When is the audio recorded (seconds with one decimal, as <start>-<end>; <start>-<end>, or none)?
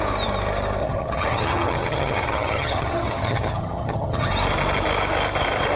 0.0-0.8; 4.3-5.8